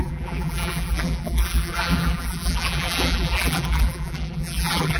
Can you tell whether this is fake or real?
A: fake